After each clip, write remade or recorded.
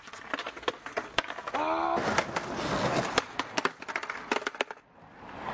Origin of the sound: recorded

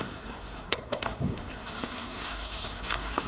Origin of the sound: remade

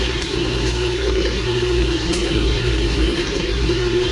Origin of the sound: remade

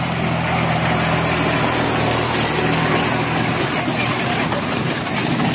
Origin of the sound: recorded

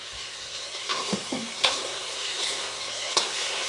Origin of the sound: remade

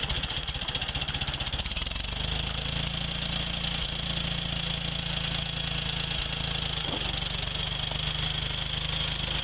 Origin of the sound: recorded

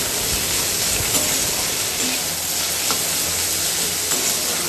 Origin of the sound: recorded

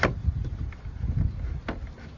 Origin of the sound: recorded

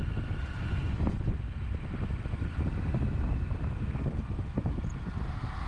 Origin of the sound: recorded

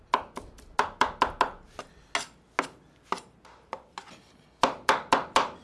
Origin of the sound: recorded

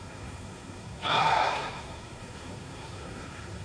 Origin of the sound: remade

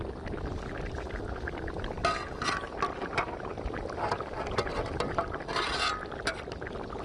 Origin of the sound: recorded